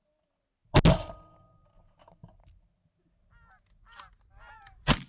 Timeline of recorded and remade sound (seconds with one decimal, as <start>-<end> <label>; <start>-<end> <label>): 0.0-5.1 recorded